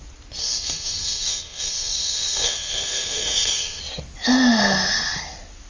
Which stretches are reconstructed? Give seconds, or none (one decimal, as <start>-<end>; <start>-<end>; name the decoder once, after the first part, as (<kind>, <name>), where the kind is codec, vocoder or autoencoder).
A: 0.4-3.8 (codec, SNAC)